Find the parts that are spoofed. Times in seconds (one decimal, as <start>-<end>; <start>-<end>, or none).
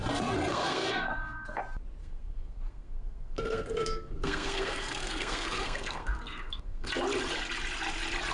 0.5-1.6; 2.0-6.9